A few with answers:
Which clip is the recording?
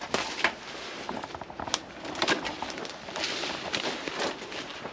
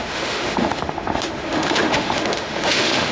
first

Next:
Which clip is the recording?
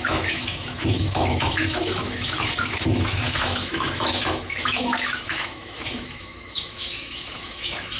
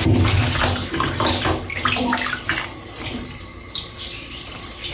second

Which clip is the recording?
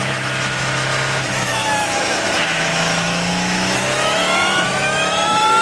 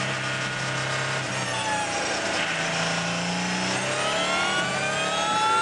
second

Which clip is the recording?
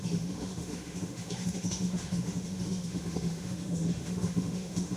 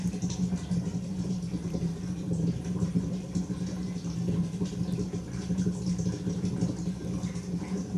second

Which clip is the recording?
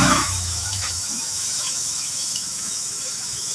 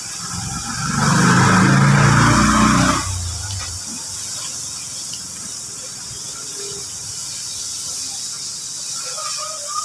second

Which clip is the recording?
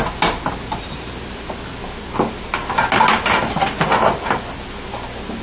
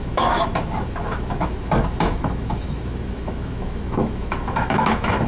first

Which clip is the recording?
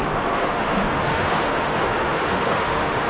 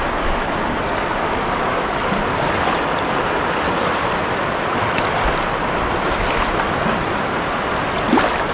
second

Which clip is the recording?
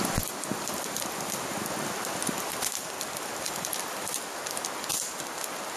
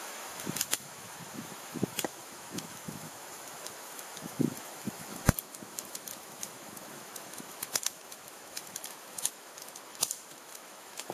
first